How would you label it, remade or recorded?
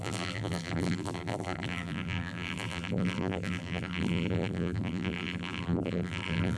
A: remade